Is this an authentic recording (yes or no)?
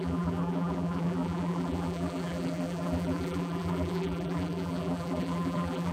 no